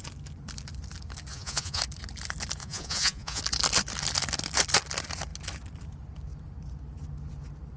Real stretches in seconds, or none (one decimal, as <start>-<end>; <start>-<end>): 0.0-1.3; 1.8-2.6; 3.4-7.8